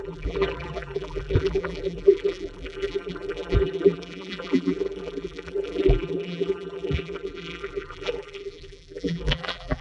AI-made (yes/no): yes